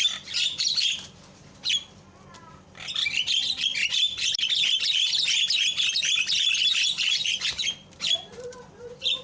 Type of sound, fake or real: fake